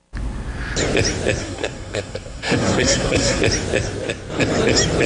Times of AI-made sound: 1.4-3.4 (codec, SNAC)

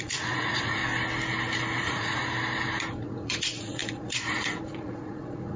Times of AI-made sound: 0.0-0.8 (vocoder, Vocos); 1.8-2.2; 2.9-5.6

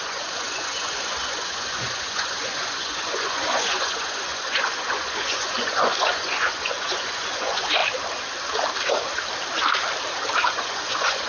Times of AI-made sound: 0.0-7.8 (vocoder, Vocos); 10.5-11.3

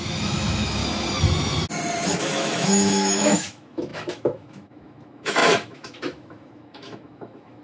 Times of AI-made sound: 0.0-0.8 (autoencoder, DAC-VAE); 2.2-7.6

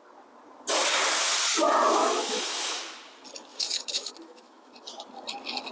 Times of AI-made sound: 2.0-2.8 (autoencoder, DAC-VAE); 3.5-4.7

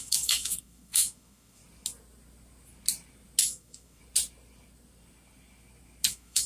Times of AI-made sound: 0.0-1.6 (autoencoder, DAC-VAE); 3.4-4.0; 6.1-6.5

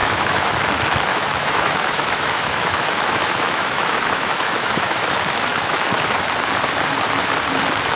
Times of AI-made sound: 0.0-0.5 (autoencoder, DAC-VAE); 1.1-5.1; 5.5-6.2

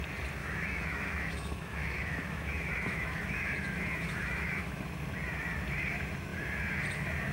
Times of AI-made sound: 0.4-4.8 (autoencoder, DAC-VAE)